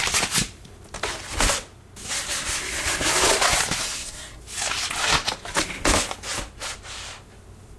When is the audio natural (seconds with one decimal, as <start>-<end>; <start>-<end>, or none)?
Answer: 0.0-3.8; 4.4-7.8